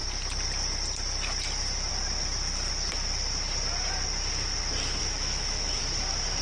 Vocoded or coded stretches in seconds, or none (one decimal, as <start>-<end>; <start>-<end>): 5.0-5.8